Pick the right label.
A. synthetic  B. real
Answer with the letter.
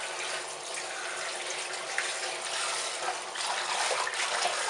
B